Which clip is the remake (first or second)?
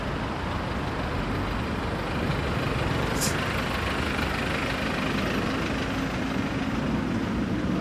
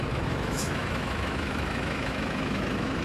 second